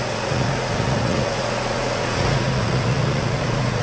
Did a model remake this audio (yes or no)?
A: yes